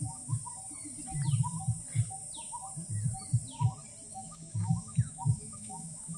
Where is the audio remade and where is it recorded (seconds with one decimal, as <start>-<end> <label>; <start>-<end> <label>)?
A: 0.0-0.4 remade; 0.4-4.1 recorded; 4.1-6.2 remade